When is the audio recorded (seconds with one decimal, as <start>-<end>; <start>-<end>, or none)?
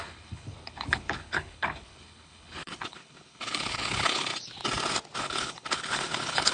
4.3-5.2